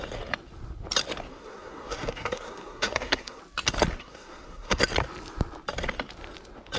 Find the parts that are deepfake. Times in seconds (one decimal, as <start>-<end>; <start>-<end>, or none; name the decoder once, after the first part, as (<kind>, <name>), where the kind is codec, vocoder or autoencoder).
1.3-3.4 (codec, SNAC); 4.0-4.8